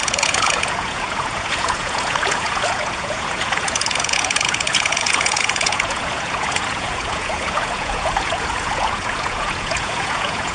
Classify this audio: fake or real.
fake